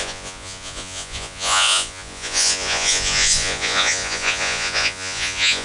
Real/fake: fake